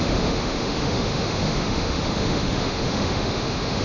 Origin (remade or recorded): remade